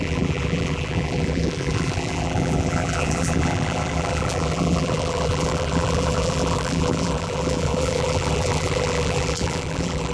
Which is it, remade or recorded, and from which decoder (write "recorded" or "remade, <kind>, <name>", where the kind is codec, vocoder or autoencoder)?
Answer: remade, vocoder, BigVGAN v2